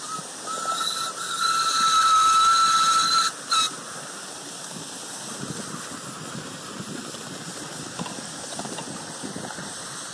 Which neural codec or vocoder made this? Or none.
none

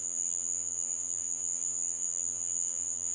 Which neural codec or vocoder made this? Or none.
vocoder, BigVGAN v2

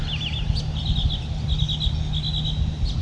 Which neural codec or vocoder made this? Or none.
none